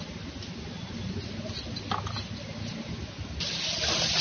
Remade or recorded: recorded